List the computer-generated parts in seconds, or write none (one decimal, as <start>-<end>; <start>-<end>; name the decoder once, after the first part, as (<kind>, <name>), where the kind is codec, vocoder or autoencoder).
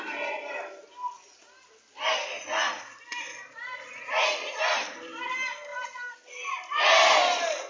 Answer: none